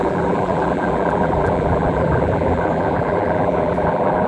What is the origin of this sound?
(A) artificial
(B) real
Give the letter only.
A